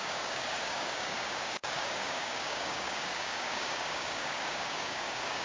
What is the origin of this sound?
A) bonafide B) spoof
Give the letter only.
B